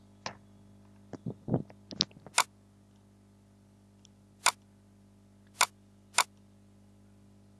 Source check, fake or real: real